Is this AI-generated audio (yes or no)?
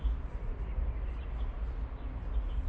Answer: no